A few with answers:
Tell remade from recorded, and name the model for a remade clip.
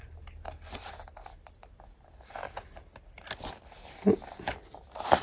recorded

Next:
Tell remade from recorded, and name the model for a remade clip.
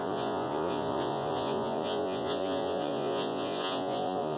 remade, vocoder, Vocos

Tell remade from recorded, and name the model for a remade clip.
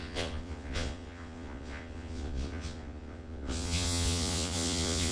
remade, vocoder, Vocos